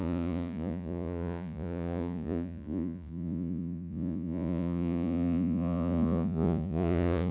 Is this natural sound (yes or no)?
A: no